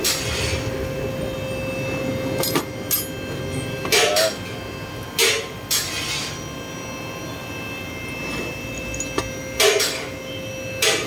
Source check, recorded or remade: recorded